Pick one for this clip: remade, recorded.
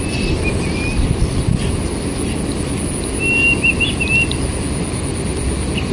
recorded